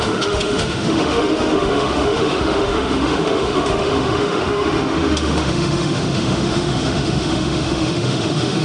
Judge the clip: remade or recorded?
remade